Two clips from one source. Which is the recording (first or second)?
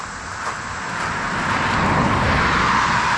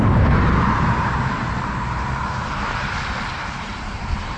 first